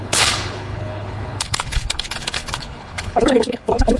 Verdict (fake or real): fake